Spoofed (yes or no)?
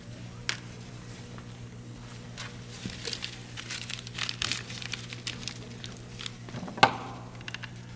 no